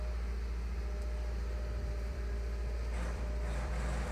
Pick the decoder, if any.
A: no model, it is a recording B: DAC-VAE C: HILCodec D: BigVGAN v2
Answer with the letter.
D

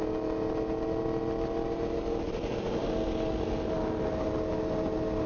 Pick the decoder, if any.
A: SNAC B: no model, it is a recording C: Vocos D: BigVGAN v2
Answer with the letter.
B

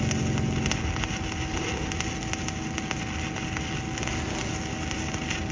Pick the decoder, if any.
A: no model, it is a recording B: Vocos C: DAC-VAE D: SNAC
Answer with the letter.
A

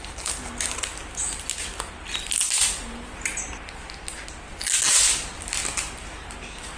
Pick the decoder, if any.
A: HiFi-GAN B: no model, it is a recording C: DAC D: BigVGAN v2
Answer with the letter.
B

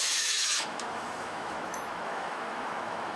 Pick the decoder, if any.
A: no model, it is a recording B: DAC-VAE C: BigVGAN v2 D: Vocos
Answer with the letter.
B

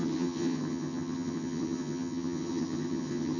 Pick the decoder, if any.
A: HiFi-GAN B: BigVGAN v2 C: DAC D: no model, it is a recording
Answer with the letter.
A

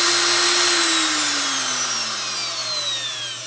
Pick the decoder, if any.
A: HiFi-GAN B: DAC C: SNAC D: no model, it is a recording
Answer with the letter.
D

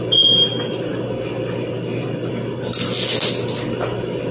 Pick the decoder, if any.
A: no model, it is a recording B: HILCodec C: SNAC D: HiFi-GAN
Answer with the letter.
A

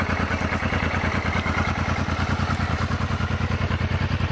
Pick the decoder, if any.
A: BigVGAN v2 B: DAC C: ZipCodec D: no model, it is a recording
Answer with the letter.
D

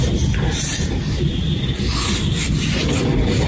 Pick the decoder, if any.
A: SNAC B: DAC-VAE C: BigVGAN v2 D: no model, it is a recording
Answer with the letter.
D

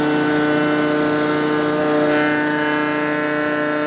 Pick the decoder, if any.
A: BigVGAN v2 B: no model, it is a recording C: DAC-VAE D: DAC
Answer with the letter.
B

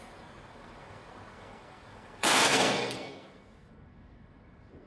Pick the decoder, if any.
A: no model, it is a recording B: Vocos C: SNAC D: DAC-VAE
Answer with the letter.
C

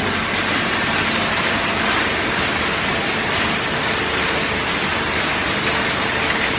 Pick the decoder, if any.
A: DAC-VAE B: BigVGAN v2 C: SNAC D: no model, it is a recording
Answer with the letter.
D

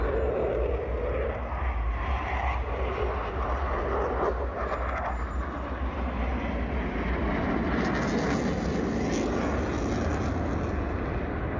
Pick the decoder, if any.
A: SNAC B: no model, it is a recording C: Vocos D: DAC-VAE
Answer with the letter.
B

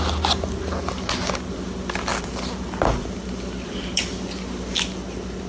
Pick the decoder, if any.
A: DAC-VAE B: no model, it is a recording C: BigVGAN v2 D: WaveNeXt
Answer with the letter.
B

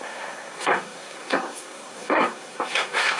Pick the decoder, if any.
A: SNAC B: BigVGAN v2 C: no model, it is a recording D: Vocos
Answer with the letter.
A